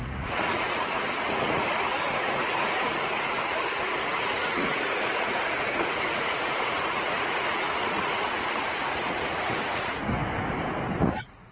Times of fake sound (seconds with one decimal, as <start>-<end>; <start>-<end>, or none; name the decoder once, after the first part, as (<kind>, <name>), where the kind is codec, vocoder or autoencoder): 0.0-10.2 (vocoder, Vocos); 11.0-11.5